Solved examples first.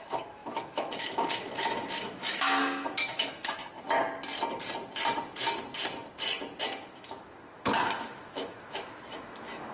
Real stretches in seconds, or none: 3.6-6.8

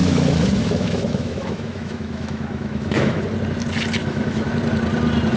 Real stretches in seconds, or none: 3.2-4.0; 4.5-5.4

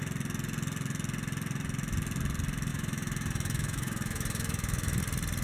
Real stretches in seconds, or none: 0.0-2.7; 5.0-5.4

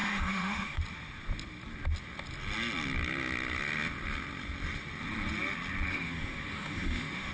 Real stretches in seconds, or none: 0.8-5.9